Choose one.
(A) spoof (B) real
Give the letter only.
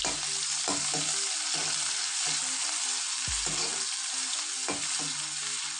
B